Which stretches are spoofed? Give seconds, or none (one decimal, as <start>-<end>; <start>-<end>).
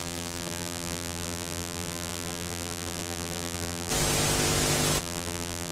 0.0-3.9; 5.0-5.7